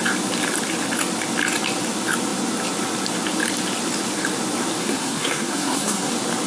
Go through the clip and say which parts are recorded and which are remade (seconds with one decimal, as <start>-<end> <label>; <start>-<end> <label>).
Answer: 0.0-4.8 recorded; 4.8-6.1 remade; 6.1-6.5 recorded